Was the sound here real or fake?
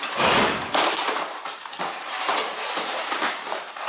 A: fake